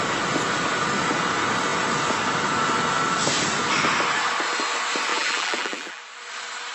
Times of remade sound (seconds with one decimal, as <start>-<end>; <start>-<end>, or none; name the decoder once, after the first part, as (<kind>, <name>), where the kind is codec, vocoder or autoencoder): 5.1-6.0 (vocoder, BigVGAN v2)